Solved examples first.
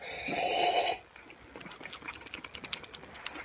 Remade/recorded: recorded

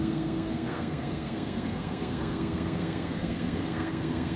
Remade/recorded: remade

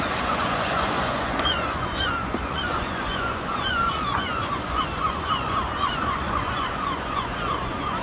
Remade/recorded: remade